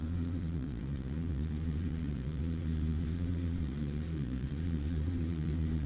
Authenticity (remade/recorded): remade